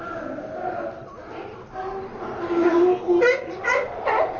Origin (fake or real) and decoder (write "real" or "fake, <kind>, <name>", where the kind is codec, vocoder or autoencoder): real